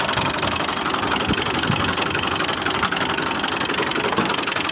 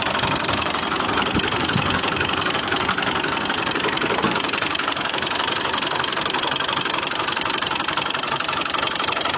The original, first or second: first